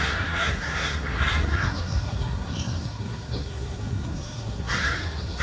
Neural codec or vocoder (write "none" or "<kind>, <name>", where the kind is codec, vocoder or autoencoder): codec, SNAC